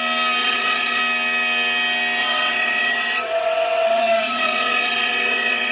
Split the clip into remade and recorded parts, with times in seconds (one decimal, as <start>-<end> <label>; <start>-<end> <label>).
0.0-0.4 recorded; 0.4-1.0 remade; 1.0-2.2 recorded; 2.2-5.7 remade